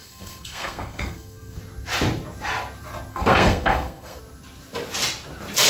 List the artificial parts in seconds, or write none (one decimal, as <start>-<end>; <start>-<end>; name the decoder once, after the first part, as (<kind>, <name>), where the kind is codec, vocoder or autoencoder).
0.0-1.6 (codec, SNAC); 3.1-4.2

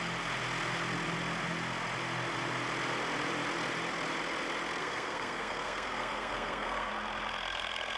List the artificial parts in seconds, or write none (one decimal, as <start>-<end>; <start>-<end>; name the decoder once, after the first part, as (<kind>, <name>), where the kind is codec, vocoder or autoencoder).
4.8-6.9 (codec, SNAC)

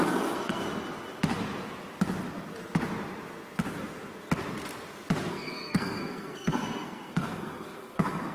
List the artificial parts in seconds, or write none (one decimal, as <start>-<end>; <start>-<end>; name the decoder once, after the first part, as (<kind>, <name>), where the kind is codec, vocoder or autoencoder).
0.0-0.6 (codec, SNAC); 5.3-8.3

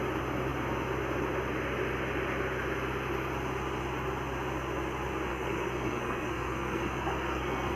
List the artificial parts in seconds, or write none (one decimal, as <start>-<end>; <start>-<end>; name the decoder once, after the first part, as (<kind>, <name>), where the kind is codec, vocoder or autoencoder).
5.3-7.8 (codec, SNAC)

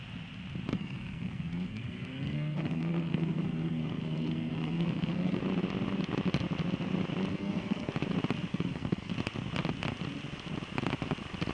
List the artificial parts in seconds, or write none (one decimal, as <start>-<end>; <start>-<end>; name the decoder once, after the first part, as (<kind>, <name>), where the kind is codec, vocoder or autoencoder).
0.7-5.4 (codec, SNAC); 7.3-7.9; 8.5-9.1

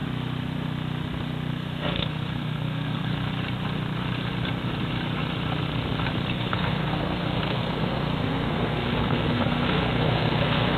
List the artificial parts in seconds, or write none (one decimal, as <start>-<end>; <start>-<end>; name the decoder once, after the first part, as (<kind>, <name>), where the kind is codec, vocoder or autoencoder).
1.5-3.1 (codec, SNAC); 6.3-10.8

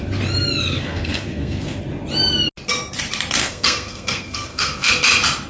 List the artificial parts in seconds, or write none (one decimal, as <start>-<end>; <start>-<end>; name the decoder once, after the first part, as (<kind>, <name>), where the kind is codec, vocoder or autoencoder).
0.6-1.8 (codec, SNAC); 3.4-4.9

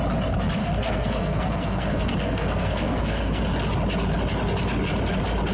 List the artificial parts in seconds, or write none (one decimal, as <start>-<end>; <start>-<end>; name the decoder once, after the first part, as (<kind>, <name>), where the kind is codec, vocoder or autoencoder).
0.6-3.4 (codec, SNAC)